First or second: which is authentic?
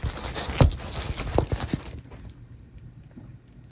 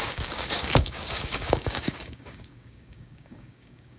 first